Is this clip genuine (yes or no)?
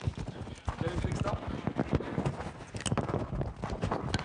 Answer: yes